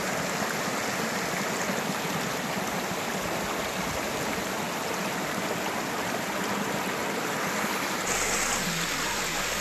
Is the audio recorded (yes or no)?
yes